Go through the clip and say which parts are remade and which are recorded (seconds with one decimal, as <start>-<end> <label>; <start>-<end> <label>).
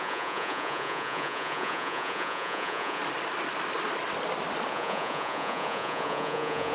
0.0-3.0 remade; 3.0-4.7 recorded; 4.7-6.7 remade